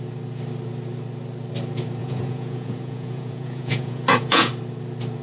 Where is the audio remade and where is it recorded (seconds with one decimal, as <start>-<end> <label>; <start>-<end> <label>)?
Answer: 0.0-2.0 recorded; 2.0-4.5 remade; 4.5-5.2 recorded